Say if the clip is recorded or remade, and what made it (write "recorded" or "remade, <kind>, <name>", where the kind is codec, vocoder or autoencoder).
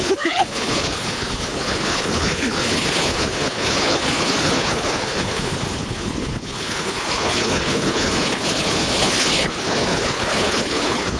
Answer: remade, codec, HILCodec